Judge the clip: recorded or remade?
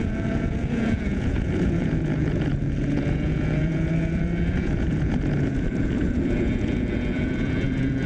remade